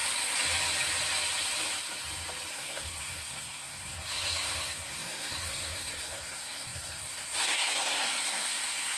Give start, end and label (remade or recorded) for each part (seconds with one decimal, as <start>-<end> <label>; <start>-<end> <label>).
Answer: 0.0-2.5 recorded; 2.5-9.0 remade